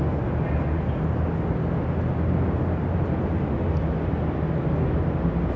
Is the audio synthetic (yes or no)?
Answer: no